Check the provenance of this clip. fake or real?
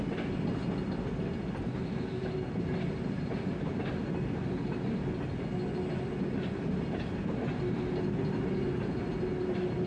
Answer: real